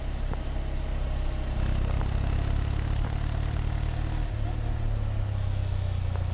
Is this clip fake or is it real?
real